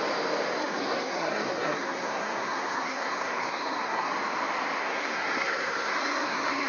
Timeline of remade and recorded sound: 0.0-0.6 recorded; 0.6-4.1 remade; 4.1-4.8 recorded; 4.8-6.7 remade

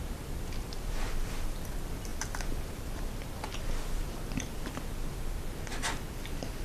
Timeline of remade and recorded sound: 0.0-6.6 remade